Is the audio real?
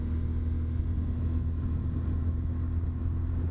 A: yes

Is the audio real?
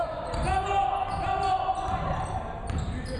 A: yes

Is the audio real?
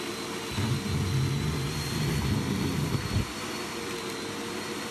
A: yes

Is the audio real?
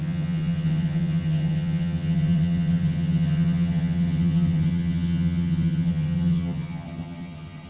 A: no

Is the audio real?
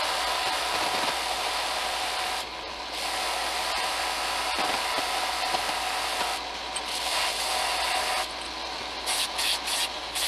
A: yes